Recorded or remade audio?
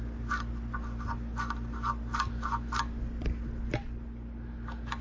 recorded